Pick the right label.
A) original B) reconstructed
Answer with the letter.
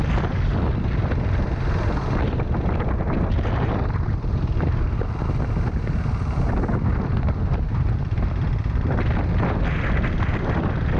A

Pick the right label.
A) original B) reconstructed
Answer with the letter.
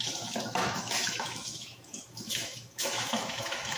B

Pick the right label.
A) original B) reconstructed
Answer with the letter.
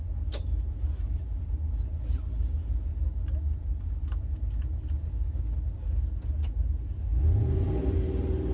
A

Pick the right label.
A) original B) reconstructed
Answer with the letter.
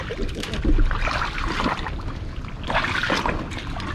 A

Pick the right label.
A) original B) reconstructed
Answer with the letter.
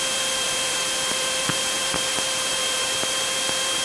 B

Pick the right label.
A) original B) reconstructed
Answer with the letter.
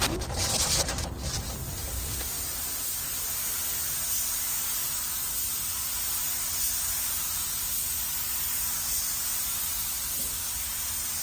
A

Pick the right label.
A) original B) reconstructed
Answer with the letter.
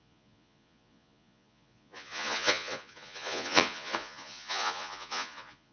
B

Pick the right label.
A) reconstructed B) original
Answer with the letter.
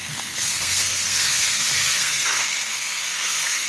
A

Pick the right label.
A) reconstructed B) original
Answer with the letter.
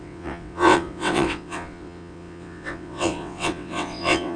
A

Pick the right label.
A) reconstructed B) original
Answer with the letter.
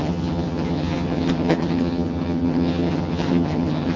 A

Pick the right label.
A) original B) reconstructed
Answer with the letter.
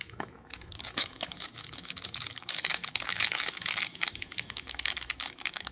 B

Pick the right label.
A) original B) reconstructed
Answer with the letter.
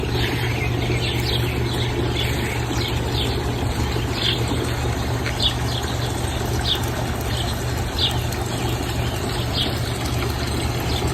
A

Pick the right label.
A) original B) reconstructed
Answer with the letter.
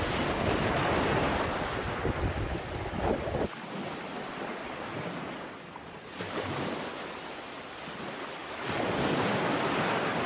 A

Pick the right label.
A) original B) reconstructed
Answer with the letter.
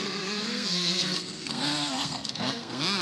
B